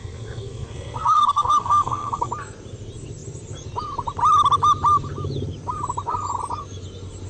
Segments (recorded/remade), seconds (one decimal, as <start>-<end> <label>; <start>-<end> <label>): 0.0-2.3 remade; 2.3-7.3 recorded